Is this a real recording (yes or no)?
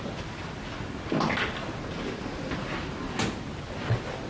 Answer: yes